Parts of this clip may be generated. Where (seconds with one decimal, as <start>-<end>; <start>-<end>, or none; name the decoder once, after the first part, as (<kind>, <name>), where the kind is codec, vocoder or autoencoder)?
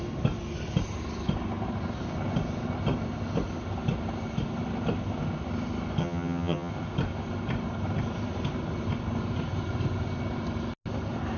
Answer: 6.0-6.7 (vocoder, HiFi-GAN)